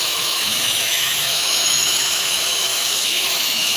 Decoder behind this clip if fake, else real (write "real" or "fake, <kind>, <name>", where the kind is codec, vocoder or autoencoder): fake, autoencoder, DAC-VAE